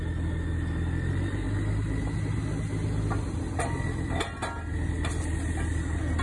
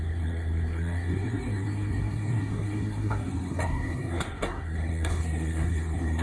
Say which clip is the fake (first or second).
second